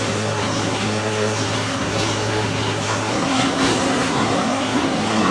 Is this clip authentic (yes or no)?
no